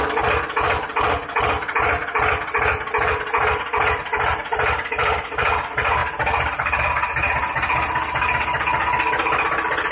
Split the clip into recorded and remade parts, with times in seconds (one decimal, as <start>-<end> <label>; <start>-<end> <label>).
0.0-6.0 recorded; 6.0-6.8 remade; 6.8-9.9 recorded